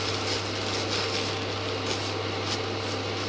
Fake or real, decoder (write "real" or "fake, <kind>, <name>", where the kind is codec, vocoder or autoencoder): real